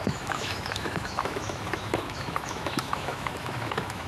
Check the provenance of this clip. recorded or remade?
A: remade